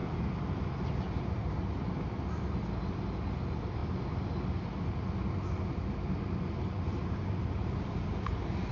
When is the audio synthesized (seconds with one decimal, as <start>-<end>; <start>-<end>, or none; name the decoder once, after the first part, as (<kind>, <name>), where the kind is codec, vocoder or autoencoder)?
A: none